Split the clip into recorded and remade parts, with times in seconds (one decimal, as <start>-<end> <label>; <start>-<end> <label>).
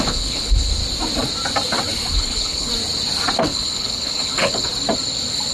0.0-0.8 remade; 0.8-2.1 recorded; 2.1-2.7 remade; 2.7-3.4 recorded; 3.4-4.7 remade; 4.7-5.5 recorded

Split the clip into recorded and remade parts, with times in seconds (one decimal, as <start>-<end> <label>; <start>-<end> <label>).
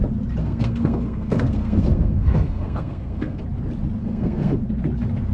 0.0-0.4 recorded; 0.4-3.4 remade; 3.4-4.0 recorded; 4.0-4.6 remade; 4.6-5.3 recorded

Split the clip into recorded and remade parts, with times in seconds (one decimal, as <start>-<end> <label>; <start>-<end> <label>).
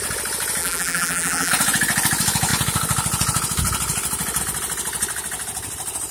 0.0-0.6 recorded; 0.6-1.5 remade; 1.5-6.1 recorded